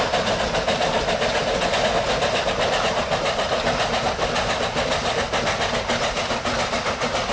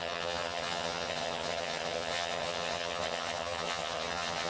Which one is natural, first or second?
first